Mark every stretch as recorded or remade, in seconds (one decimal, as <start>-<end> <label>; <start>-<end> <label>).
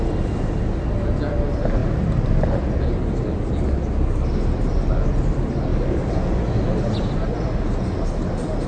0.0-8.7 recorded